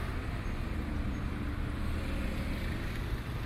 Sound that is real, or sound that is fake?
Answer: real